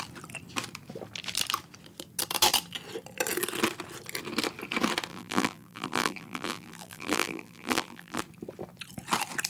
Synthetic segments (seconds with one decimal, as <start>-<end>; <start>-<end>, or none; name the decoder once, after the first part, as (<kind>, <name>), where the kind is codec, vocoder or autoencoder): 5.1-8.2 (vocoder, BigVGAN v2)